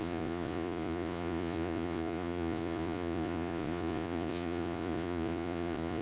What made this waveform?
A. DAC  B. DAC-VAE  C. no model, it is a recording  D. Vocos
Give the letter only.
D